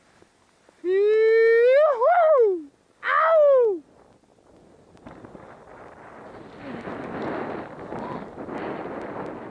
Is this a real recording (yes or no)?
yes